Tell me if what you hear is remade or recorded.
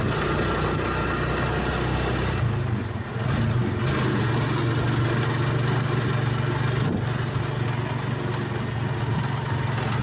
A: recorded